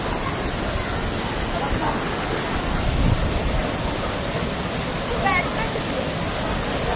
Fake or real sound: real